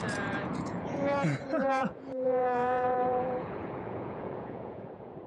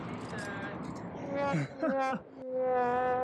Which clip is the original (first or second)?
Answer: second